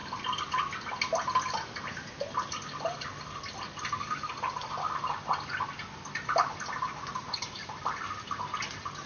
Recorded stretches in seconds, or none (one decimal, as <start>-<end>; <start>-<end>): 0.0-9.1